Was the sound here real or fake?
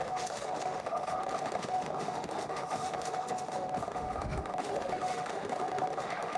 fake